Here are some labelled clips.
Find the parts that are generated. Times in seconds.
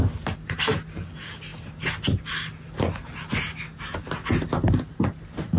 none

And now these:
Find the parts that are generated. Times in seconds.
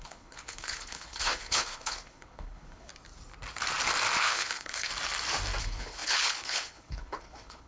0.0-2.9 (codec, HILCodec); 4.2-4.9; 5.6-7.7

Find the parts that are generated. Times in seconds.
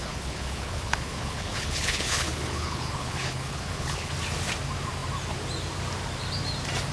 0.0-4.1 (codec, HILCodec)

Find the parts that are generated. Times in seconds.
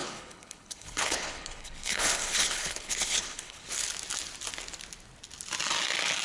0.0-3.7 (codec, HILCodec)